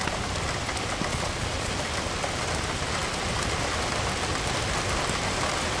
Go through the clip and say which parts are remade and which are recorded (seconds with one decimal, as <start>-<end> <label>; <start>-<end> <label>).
0.0-1.1 recorded; 1.1-1.7 remade; 1.7-5.8 recorded